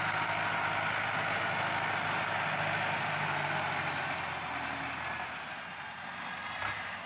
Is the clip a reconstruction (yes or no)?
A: no